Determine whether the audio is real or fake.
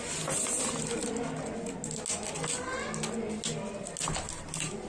real